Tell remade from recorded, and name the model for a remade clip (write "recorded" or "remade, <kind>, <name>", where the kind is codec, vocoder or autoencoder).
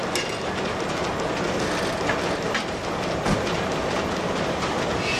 recorded